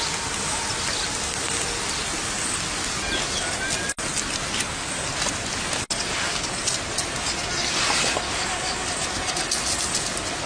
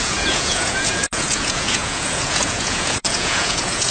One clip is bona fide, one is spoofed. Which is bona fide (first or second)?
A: first